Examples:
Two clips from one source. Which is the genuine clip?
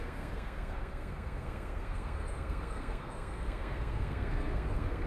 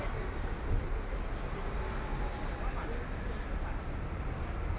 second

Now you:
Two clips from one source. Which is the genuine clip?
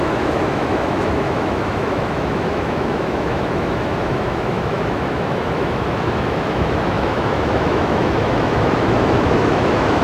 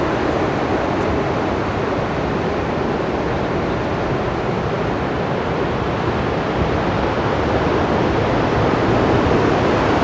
second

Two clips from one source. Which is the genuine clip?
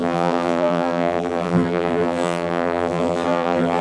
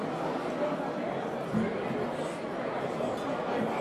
second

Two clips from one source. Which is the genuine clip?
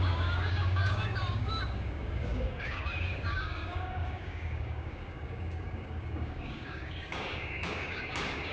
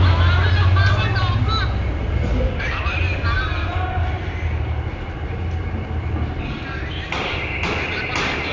second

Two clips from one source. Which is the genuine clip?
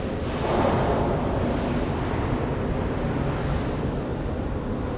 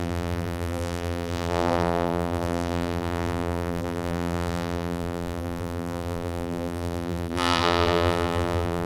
first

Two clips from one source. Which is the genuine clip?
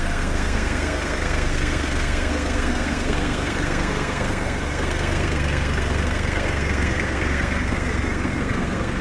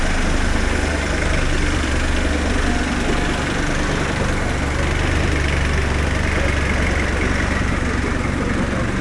second